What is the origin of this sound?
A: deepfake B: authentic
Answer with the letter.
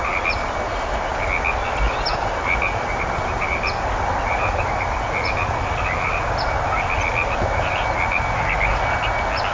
B